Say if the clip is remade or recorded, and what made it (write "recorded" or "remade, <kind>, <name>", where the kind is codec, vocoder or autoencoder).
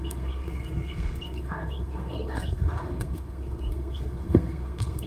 remade, codec, SNAC